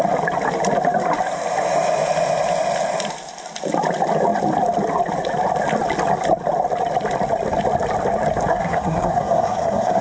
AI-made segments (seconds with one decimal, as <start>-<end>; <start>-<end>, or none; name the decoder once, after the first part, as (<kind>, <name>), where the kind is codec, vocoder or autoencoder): 8.5-10.0 (codec, SNAC)